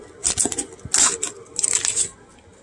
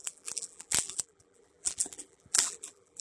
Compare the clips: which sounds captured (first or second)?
first